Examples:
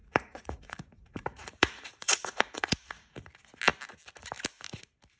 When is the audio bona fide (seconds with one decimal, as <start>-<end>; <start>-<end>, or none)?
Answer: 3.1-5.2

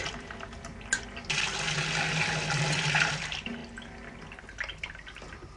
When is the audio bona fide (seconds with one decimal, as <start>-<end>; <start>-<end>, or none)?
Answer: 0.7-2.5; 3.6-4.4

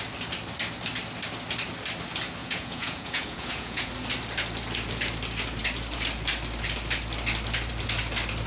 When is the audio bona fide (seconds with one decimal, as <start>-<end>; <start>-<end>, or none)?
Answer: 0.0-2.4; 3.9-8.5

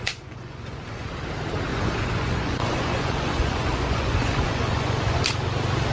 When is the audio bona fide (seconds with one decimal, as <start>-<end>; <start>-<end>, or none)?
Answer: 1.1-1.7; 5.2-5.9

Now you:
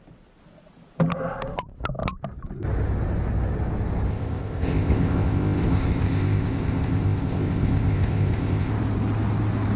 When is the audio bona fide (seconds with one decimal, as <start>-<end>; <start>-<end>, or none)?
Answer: 0.0-4.1; 8.7-9.8

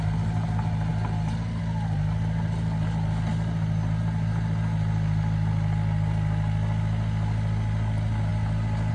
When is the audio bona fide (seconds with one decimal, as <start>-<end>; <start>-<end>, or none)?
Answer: 0.0-8.9

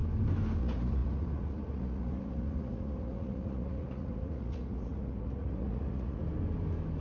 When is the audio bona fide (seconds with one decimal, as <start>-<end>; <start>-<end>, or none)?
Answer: 0.0-0.6; 6.2-7.0

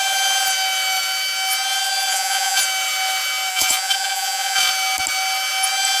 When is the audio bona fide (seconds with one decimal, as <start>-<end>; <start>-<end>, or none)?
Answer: 0.0-2.1; 2.6-3.5; 4.7-6.0